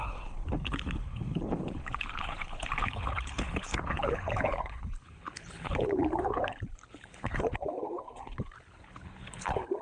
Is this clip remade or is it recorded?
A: remade